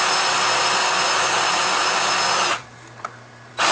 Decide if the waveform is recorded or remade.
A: recorded